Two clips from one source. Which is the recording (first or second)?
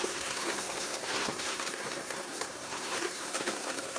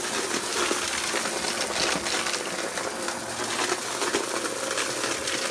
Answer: second